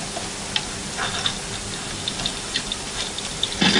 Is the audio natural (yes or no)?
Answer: yes